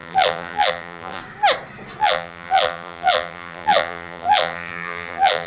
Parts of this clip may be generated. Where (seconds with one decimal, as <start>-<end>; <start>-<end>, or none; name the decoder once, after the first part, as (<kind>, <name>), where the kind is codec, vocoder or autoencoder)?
0.0-1.2 (vocoder, BigVGAN v2); 2.0-5.5